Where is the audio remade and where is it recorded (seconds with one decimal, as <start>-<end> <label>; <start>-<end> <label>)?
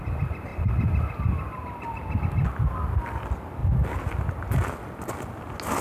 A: 0.0-5.8 recorded